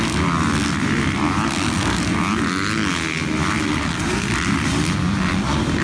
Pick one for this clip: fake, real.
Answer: real